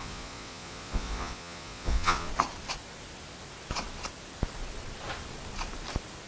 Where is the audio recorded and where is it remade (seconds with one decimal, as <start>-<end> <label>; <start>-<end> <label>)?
0.0-2.3 remade; 2.3-6.3 recorded